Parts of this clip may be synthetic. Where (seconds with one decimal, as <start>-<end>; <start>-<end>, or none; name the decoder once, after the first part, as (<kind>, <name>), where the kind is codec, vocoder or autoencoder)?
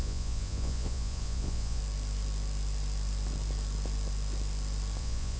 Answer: 0.0-1.8 (vocoder, Vocos); 5.0-5.4